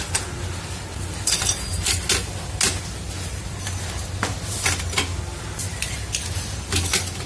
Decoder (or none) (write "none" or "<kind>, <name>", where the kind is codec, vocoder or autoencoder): none